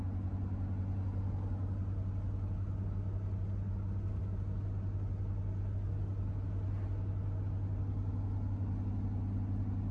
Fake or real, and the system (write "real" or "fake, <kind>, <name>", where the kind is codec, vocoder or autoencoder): real